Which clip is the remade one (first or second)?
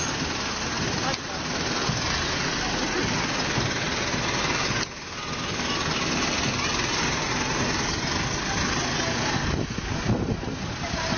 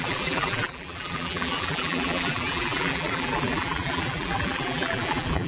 second